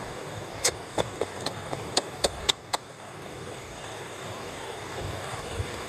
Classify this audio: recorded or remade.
remade